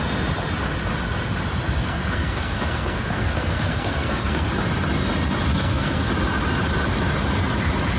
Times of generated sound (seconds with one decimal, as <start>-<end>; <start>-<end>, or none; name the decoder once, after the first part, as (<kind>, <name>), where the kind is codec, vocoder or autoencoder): 1.8-4.5 (codec, SNAC); 5.5-6.1

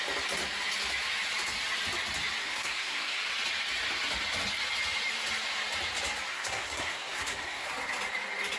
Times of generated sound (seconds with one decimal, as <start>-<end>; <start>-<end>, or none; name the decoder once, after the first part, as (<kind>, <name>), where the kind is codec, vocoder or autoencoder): 2.4-3.2 (codec, SNAC); 6.3-7.7

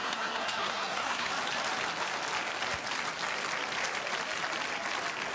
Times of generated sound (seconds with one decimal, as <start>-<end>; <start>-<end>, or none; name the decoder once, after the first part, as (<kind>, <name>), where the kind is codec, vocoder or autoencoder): 0.0-1.3 (codec, SNAC)

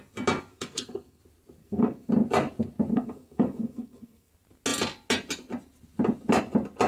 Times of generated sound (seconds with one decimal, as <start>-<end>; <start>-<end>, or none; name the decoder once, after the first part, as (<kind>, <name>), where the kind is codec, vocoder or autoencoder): 0.5-1.2 (codec, SNAC); 1.6-2.1; 2.9-4.3

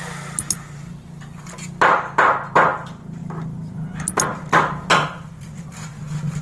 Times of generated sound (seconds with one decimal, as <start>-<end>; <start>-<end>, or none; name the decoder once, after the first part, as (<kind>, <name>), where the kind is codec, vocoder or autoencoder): none

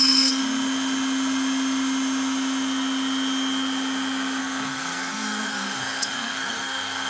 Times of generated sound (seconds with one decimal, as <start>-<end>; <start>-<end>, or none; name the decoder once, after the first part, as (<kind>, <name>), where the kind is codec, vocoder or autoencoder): 0.0-0.4 (codec, SNAC); 4.4-7.1

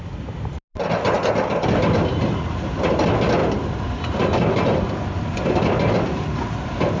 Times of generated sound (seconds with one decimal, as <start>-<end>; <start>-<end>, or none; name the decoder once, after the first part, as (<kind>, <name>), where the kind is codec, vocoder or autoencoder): none